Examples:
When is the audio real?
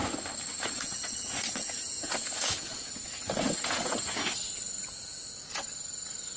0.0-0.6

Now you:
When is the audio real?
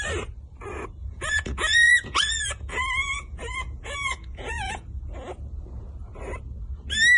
0.0-1.0; 5.0-7.2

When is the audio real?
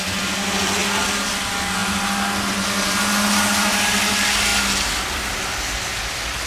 0.0-6.5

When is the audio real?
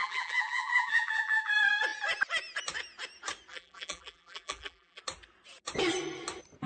1.5-3.5; 5.0-6.7